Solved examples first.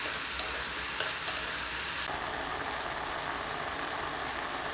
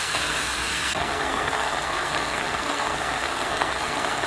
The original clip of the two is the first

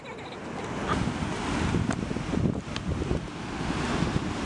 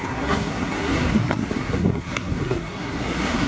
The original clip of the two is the first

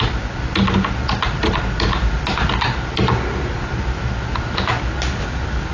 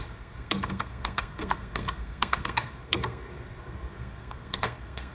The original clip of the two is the first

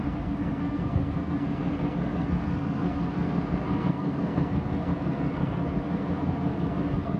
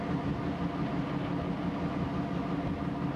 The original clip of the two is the second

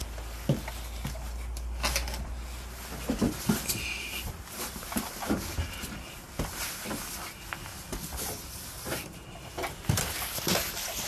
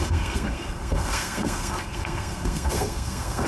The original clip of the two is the first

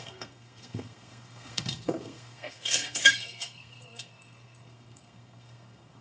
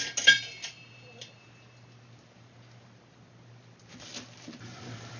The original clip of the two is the second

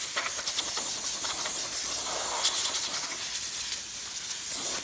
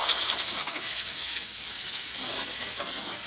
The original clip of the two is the first